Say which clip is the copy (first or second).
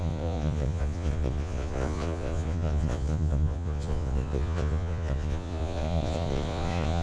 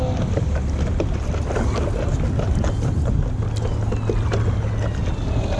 first